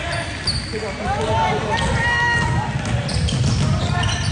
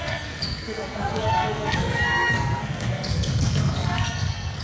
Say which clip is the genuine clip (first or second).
first